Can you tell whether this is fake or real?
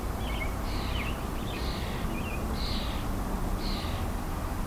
real